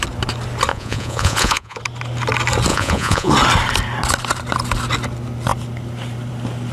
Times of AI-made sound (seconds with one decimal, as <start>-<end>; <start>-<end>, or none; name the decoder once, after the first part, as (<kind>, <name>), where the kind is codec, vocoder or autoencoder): 0.7-1.8 (vocoder, Vocos); 2.7-3.3